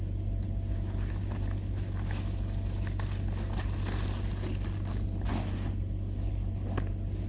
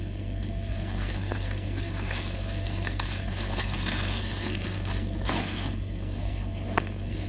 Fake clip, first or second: second